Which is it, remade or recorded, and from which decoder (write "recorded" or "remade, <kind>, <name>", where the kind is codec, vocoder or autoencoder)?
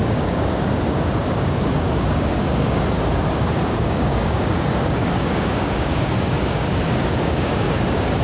remade, codec, DAC